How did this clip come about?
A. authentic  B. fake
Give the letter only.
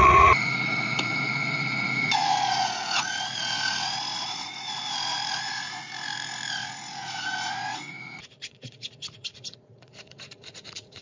B